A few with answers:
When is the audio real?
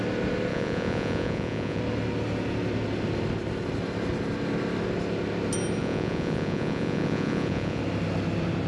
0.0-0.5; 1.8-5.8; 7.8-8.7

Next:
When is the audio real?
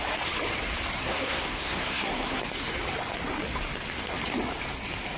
0.0-1.0; 2.4-5.2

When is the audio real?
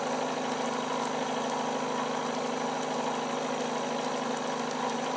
0.0-5.2